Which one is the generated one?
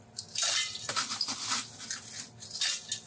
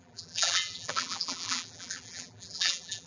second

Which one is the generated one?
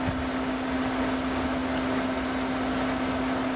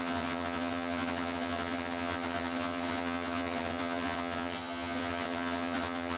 second